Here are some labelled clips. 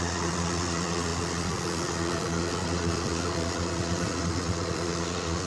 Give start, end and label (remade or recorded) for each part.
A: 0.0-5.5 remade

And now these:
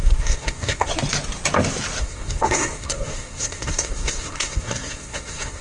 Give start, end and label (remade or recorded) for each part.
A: 0.0-0.9 remade; 0.9-2.0 recorded; 2.0-5.6 remade

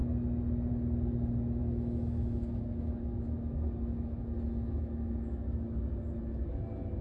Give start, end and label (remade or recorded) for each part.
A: 0.0-1.6 recorded; 1.6-5.8 remade; 5.8-7.0 recorded

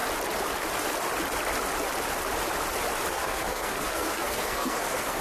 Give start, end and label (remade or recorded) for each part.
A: 0.0-3.1 recorded; 3.1-5.2 remade

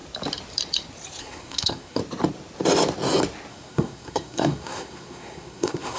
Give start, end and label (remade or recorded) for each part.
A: 0.0-1.2 recorded; 1.2-2.0 remade; 2.0-3.5 recorded; 3.5-6.0 remade

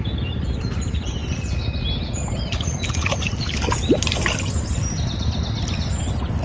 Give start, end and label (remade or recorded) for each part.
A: 0.0-6.4 recorded

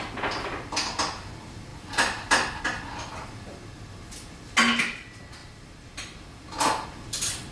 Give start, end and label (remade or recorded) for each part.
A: 0.0-7.5 recorded

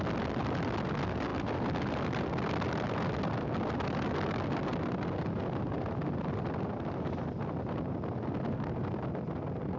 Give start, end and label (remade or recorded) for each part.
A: 0.0-9.8 recorded